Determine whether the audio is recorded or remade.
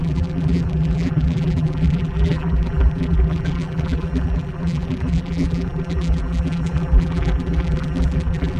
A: remade